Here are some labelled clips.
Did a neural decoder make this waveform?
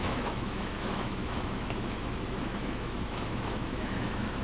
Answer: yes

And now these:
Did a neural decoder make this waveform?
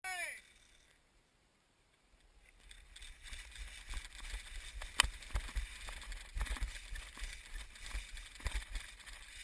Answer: no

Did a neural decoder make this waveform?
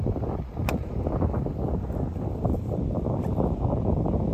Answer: no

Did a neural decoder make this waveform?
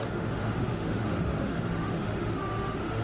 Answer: yes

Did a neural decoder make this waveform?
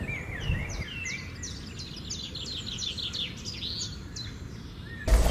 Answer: no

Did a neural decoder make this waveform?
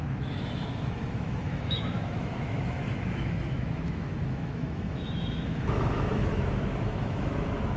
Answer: yes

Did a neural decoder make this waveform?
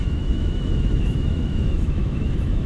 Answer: yes